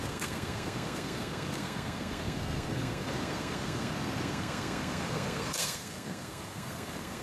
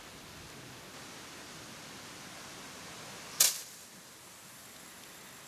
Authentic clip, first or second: second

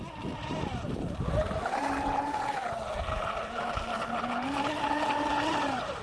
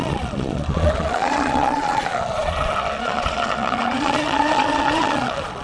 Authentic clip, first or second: first